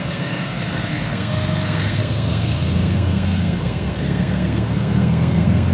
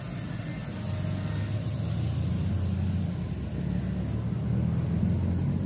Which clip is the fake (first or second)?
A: first